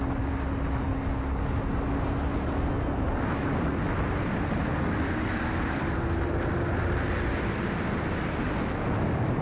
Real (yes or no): yes